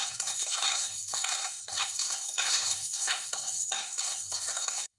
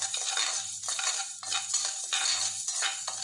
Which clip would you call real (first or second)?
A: second